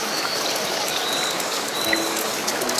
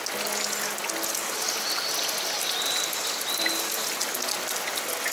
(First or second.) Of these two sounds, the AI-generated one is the first